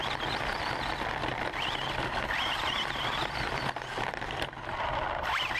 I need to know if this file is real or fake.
real